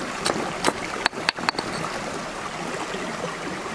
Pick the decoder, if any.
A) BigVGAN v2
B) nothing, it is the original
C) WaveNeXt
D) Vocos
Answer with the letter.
B